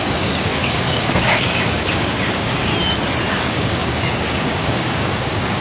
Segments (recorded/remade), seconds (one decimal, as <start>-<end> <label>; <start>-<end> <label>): 0.0-2.7 remade; 2.7-3.3 recorded; 3.3-5.6 remade